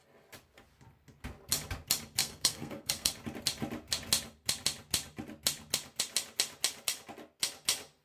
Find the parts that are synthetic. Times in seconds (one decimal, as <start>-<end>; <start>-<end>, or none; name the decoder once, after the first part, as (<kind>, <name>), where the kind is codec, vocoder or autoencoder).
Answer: 2.2-3.1 (codec, SNAC)